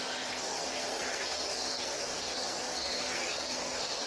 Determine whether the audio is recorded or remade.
remade